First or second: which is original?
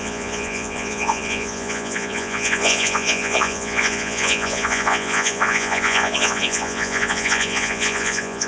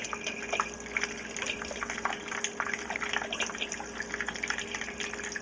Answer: second